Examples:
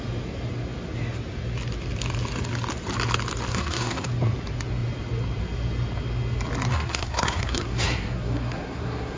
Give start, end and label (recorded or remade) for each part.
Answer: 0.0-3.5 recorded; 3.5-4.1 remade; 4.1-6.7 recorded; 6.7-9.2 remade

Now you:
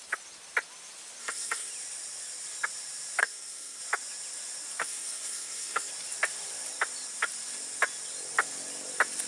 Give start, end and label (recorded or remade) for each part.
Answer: 0.0-1.2 recorded; 1.2-1.7 remade; 1.7-3.2 recorded; 3.2-3.8 remade; 3.8-4.8 recorded; 4.8-5.9 remade; 5.9-9.3 recorded

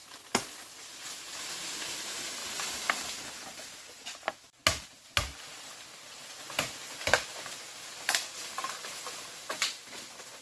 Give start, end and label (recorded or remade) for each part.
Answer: 0.0-10.4 recorded

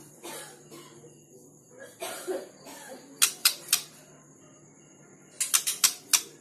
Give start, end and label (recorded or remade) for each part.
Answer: 0.0-0.7 remade; 0.7-3.4 recorded; 3.4-5.1 remade; 5.1-6.4 recorded

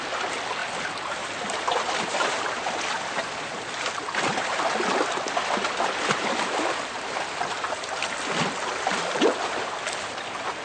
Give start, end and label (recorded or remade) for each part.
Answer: 0.0-10.6 recorded